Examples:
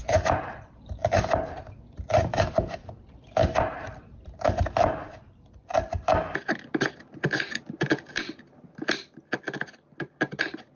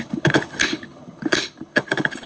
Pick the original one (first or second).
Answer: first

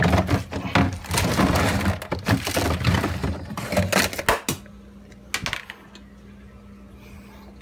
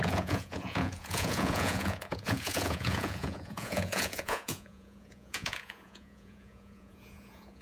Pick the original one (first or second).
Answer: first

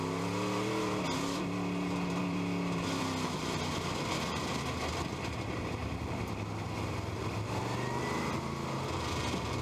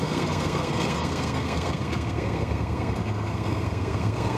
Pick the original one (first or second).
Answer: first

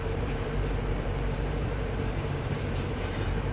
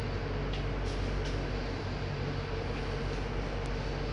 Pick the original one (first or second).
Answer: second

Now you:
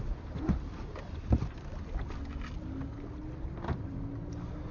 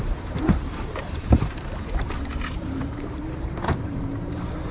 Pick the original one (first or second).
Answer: first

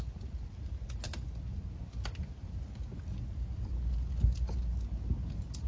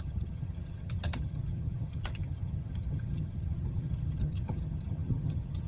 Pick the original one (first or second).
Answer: first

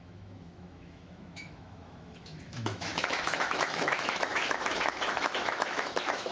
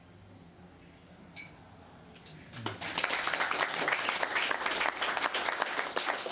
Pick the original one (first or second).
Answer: second